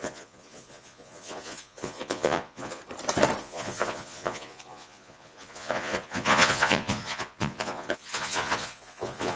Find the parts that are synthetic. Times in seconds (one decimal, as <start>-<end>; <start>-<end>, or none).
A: 0.0-2.8; 3.4-9.4